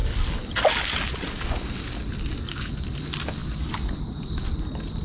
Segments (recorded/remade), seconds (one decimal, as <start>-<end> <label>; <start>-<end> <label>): 0.0-5.0 recorded